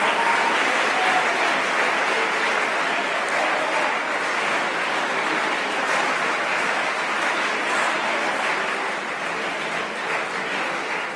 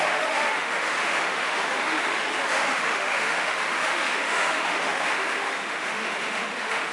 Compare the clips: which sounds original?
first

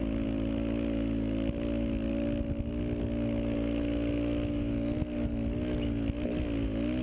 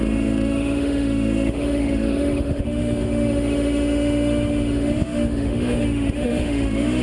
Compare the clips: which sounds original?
first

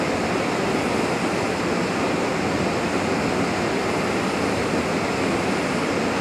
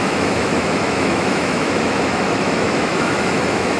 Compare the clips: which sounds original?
first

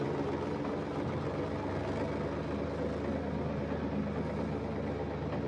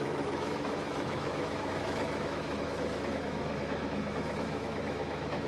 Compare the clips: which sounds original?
first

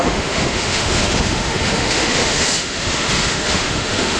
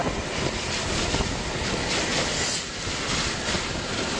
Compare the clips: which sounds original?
second